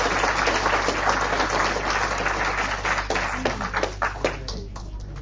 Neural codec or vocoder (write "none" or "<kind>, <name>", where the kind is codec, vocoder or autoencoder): none